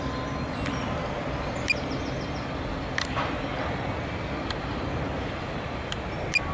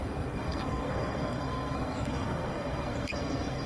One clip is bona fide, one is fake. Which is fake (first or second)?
second